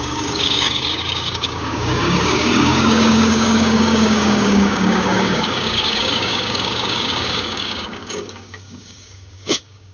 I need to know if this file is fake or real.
fake